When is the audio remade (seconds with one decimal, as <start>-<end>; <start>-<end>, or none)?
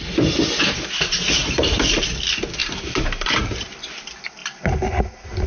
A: 1.4-2.0; 2.6-3.8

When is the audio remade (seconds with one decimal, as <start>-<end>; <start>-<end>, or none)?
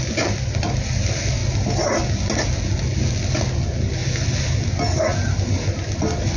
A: none